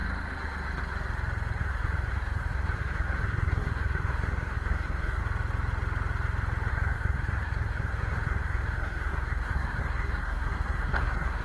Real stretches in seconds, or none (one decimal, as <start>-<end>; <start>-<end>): 0.0-1.6; 5.2-6.7